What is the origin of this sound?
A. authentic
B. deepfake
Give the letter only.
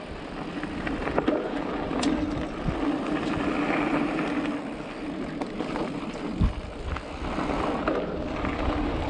A